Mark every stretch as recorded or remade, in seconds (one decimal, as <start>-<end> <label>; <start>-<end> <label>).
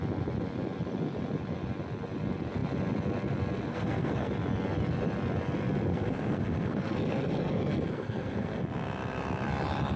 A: 0.0-3.7 recorded; 3.7-4.3 remade; 4.3-5.9 recorded; 5.9-8.6 remade; 8.6-10.0 recorded